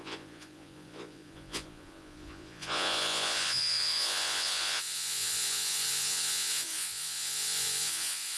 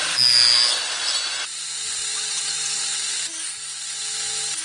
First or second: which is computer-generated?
first